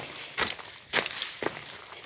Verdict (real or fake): real